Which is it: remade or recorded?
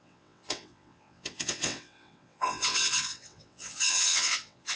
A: remade